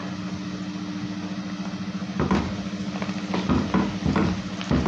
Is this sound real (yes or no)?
yes